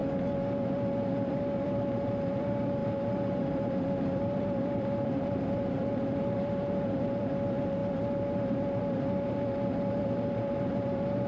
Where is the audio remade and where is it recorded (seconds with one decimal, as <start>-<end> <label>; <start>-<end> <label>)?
0.0-1.3 recorded; 1.3-11.3 remade